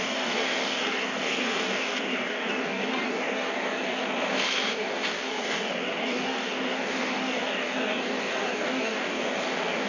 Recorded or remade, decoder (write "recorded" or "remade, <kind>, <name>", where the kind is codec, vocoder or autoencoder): remade, codec, DAC